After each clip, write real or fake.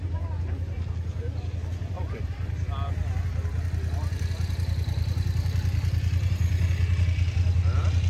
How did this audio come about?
real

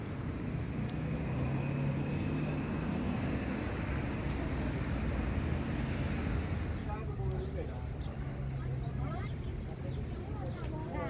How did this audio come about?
real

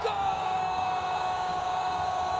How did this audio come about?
fake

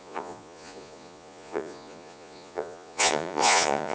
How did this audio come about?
fake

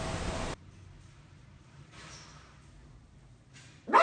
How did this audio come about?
real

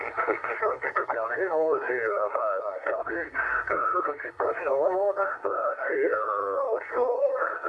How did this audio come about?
fake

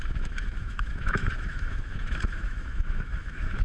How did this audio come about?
fake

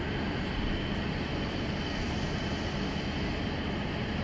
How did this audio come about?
real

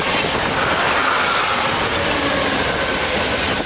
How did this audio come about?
real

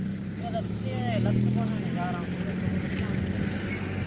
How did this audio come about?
real